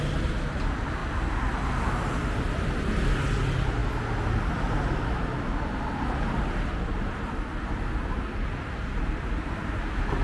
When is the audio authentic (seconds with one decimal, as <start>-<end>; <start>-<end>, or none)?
0.0-10.2

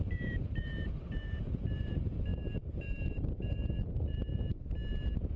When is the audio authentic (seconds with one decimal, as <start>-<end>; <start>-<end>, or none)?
4.3-5.4